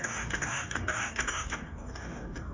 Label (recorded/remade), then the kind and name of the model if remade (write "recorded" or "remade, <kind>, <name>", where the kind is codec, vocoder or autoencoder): remade, codec, DAC